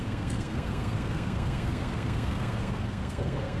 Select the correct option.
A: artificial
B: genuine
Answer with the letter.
A